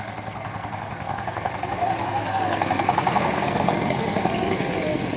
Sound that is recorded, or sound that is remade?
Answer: remade